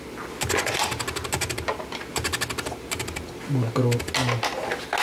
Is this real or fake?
real